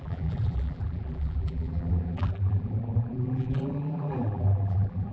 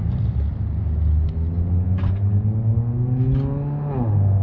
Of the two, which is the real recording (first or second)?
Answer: second